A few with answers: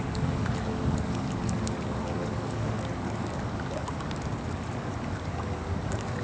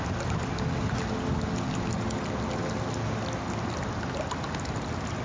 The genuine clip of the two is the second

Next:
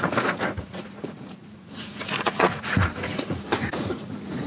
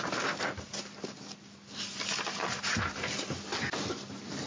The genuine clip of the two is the second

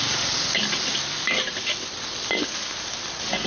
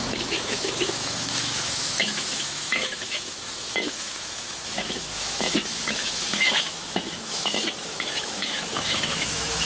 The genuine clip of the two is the first